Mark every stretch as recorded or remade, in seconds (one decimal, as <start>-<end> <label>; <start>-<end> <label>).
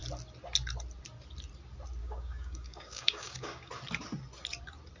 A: 0.0-2.0 recorded; 2.0-3.7 remade; 3.7-5.0 recorded